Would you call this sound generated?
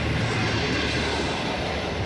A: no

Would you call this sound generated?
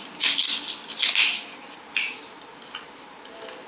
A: no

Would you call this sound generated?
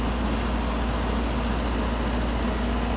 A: no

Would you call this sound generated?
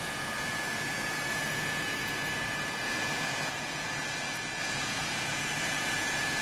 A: yes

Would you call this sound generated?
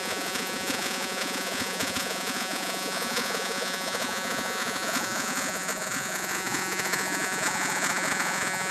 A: yes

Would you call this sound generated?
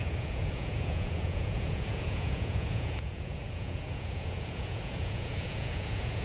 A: yes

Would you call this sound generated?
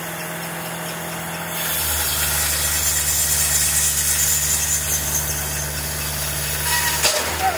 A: no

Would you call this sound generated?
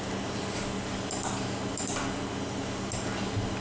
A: no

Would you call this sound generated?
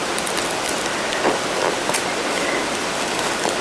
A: no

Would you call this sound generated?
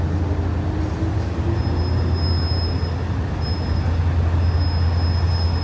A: no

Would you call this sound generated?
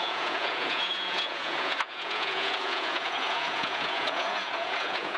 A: yes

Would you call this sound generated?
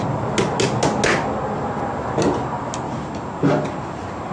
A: no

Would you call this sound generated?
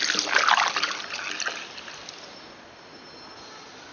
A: no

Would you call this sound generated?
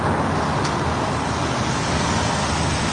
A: no